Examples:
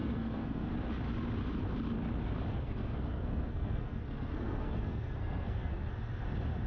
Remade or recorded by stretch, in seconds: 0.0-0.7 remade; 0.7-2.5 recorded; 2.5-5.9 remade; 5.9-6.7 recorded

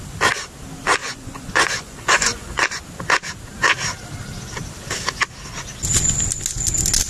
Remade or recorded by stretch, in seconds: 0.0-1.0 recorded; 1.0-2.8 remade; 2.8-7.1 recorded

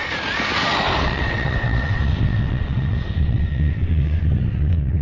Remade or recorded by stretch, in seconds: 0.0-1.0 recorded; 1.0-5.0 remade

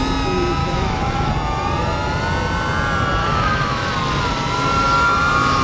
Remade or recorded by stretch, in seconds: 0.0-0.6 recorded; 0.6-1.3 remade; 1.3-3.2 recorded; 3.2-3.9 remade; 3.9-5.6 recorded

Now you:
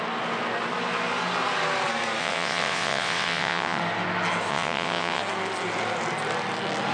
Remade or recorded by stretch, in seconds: 0.0-2.2 recorded; 2.2-3.8 remade; 3.8-4.5 recorded; 4.5-5.2 remade; 5.2-6.9 recorded